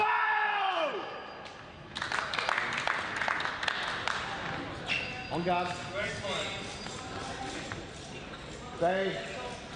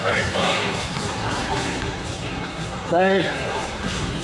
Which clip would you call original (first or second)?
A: first